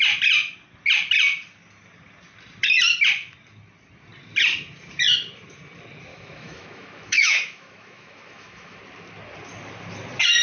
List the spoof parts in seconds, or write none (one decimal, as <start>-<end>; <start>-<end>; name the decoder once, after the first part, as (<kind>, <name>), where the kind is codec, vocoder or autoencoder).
6.1-8.8 (autoencoder, DAC-VAE)